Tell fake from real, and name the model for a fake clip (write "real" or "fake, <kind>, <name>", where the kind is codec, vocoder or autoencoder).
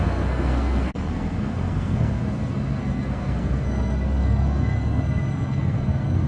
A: fake, codec, SNAC